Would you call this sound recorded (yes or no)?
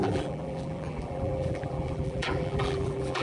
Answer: no